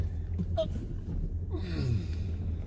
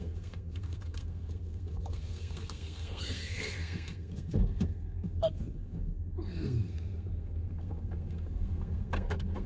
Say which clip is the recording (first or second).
first